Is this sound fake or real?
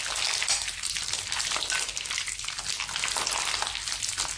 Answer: real